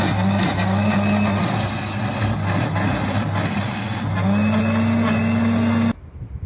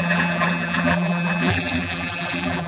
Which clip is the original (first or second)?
first